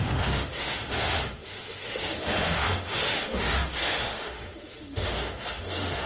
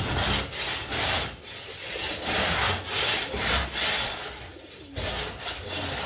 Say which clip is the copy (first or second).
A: first